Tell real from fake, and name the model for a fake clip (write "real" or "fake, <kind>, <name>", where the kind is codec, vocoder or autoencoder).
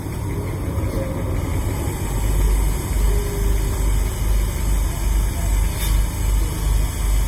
real